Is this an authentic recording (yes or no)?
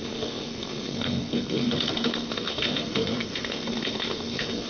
no